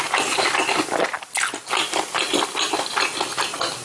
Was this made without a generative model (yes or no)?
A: yes